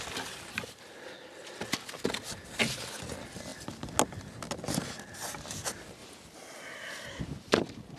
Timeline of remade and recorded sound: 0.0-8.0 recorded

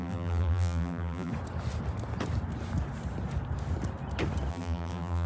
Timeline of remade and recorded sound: 0.0-1.3 remade; 1.3-4.5 recorded; 4.5-5.3 remade

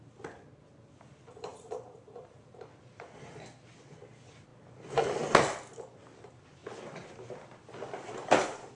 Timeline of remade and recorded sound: 0.0-1.5 recorded; 1.5-2.4 remade; 2.4-8.7 recorded

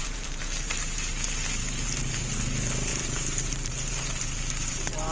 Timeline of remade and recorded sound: 0.0-2.3 remade; 2.3-2.9 recorded; 2.9-5.1 remade

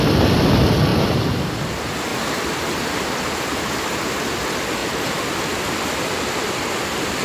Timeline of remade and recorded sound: 0.0-0.9 recorded; 0.9-1.5 remade; 1.5-7.2 recorded

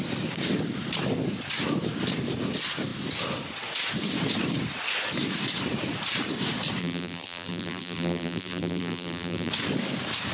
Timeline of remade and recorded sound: 0.0-6.8 recorded; 6.8-9.5 remade; 9.5-10.3 recorded